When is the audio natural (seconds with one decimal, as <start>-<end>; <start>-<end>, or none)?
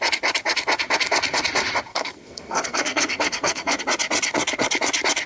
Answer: 0.0-1.9; 3.8-5.3